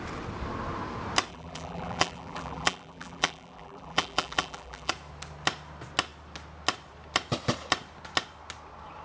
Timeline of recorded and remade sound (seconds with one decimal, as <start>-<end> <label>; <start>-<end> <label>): 0.0-1.3 recorded; 1.3-4.9 remade; 4.9-9.0 recorded